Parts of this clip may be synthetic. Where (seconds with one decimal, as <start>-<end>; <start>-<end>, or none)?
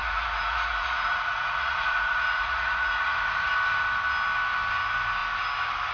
0.0-3.5